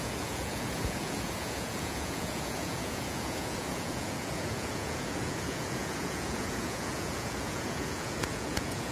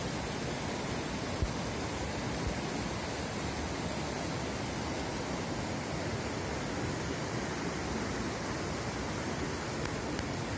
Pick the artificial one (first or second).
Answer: first